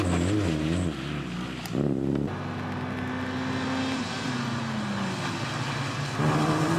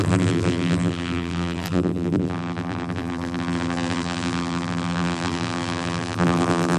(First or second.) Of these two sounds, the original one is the first